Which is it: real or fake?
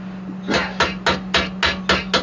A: real